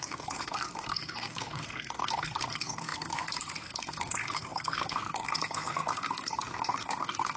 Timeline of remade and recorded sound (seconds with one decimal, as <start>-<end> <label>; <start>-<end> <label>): 0.0-7.4 remade